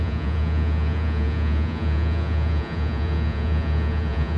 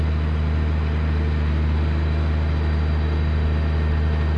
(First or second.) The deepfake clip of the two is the first